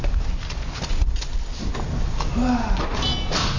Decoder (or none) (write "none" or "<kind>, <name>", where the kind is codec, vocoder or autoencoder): none